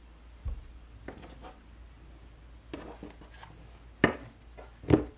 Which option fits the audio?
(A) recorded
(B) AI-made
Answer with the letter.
A